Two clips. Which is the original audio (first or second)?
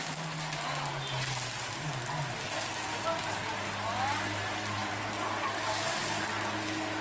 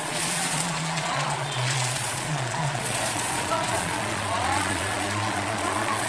first